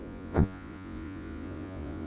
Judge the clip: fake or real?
fake